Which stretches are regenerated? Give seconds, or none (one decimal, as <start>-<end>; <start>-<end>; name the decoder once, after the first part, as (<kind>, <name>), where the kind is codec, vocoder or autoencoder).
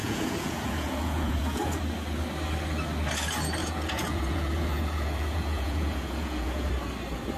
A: 0.0-1.8 (vocoder, Vocos); 3.6-6.7